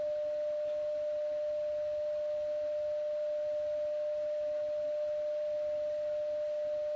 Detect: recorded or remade recorded